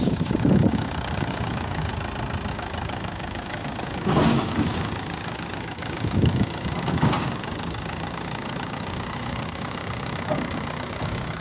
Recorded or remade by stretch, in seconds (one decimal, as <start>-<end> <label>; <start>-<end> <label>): 0.0-1.9 remade; 1.9-2.5 recorded; 2.5-11.4 remade